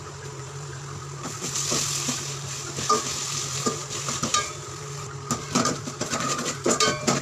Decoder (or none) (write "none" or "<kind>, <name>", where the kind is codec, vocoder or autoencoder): vocoder, BigVGAN v2